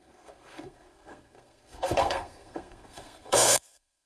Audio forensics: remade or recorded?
remade